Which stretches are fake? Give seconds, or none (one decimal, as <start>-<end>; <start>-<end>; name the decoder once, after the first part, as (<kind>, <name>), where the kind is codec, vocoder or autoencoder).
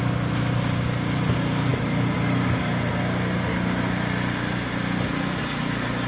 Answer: none